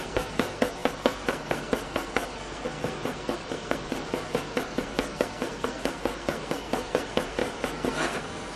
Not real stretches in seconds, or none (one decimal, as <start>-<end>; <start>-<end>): 0.0-8.6